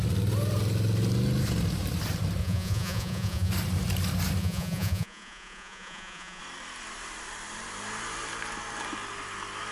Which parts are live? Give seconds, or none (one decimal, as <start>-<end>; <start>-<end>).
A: 0.0-2.4; 3.5-4.4; 6.4-9.7